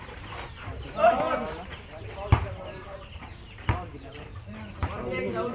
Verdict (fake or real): fake